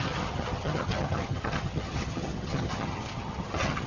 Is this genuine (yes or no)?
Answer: no